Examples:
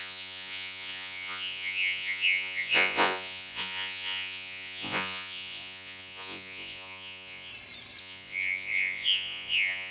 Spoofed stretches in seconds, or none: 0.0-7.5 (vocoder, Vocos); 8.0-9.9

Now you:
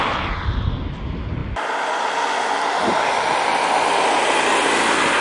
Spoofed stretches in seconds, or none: none

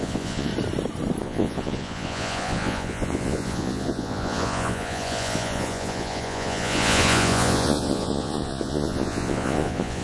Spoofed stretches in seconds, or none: 0.0-0.5 (vocoder, Vocos); 1.2-10.0

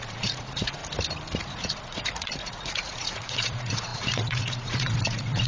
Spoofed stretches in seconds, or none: 0.0-0.8 (vocoder, Vocos); 1.4-5.5

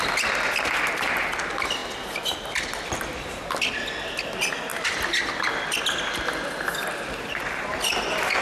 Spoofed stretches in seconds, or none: none

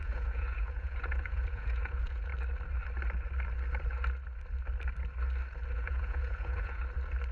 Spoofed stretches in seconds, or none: 0.0-2.3 (vocoder, Vocos); 5.7-6.8

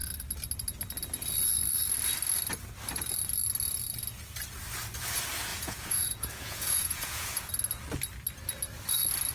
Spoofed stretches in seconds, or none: 5.5-7.5 (vocoder, Vocos)

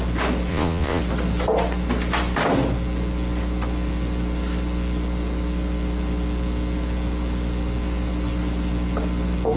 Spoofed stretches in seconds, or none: 0.5-1.0 (vocoder, Vocos)